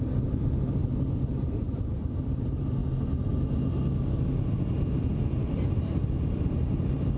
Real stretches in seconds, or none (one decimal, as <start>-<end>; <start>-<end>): 2.8-5.2